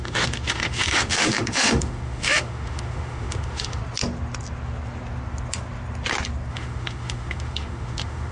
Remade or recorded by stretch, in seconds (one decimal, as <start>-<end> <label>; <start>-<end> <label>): 0.0-3.8 remade; 3.8-6.5 recorded; 6.5-8.3 remade

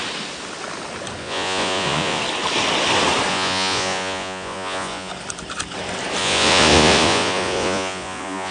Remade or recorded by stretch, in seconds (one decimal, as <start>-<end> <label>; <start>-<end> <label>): 0.0-1.2 recorded; 1.2-2.2 remade; 2.2-3.3 recorded; 3.3-5.1 remade; 5.1-6.2 recorded; 6.2-8.5 remade

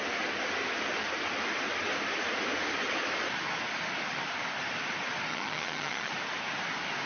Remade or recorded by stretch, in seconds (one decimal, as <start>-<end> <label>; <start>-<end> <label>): 0.0-5.3 recorded; 5.3-6.1 remade; 6.1-7.1 recorded